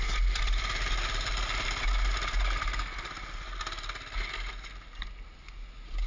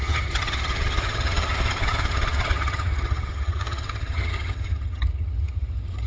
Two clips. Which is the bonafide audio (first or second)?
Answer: first